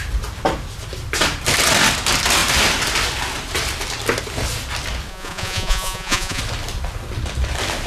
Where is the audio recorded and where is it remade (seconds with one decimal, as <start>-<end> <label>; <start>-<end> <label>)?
0.0-5.1 recorded; 5.1-6.4 remade; 6.4-7.9 recorded